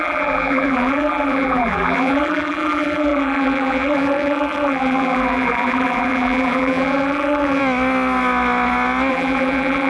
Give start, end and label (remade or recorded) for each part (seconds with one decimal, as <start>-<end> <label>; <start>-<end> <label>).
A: 0.0-7.6 remade; 7.6-9.1 recorded; 9.1-9.9 remade